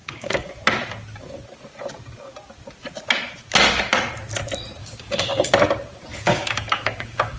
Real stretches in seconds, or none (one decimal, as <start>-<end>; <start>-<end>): 0.5-4.8; 5.5-6.1